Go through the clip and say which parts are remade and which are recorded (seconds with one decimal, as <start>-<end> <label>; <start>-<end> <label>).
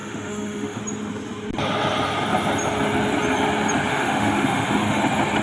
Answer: 0.0-0.8 remade; 0.8-3.9 recorded; 3.9-5.0 remade; 5.0-5.4 recorded